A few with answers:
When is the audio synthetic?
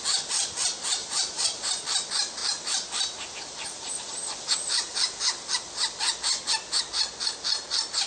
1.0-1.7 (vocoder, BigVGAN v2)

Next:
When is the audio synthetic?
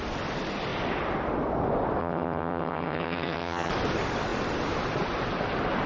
2.0-3.7 (vocoder, HiFi-GAN)